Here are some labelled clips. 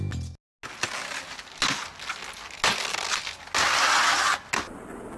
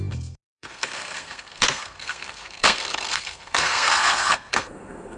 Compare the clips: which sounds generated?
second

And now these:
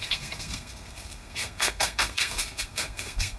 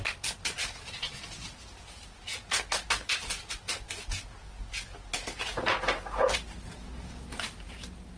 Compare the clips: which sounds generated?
first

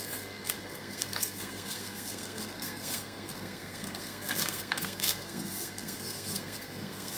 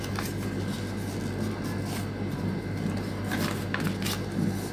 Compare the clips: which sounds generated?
first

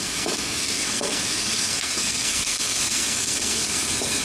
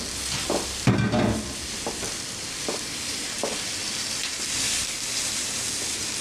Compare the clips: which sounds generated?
first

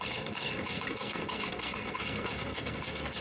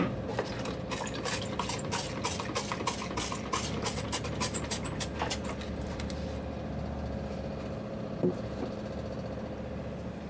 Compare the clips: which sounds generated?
first